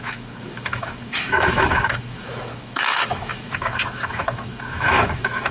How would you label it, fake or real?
fake